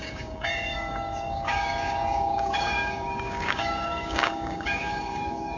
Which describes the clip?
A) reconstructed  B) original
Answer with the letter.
A